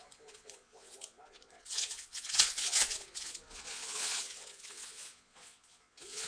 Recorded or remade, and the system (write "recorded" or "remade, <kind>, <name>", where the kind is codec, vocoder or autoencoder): remade, vocoder, Vocos